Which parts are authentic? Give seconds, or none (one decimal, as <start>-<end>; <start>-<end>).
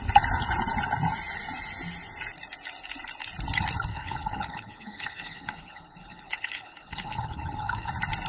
0.0-3.9; 7.9-8.3